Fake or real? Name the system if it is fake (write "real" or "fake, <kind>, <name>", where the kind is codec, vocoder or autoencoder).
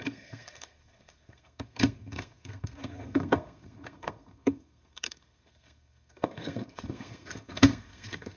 fake, codec, SNAC